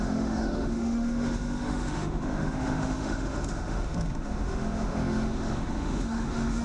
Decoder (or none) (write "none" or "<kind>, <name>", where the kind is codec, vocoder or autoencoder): autoencoder, DAC-VAE